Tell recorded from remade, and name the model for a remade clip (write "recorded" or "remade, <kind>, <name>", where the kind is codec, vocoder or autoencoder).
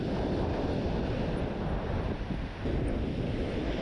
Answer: recorded